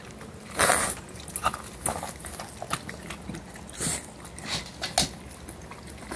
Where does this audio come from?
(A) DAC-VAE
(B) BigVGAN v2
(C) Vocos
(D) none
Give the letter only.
D